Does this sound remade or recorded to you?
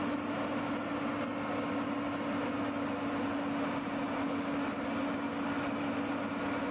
recorded